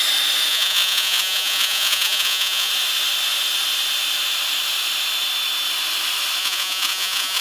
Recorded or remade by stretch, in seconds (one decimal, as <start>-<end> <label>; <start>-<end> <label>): 0.0-0.5 recorded; 0.5-2.7 remade; 2.7-6.4 recorded; 6.4-7.4 remade